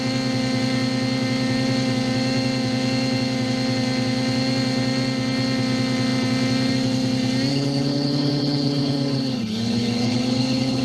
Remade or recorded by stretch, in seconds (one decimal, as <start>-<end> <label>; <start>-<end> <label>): 0.0-7.5 recorded; 7.5-10.8 remade